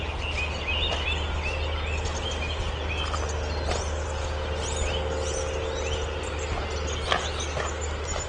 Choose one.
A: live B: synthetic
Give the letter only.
A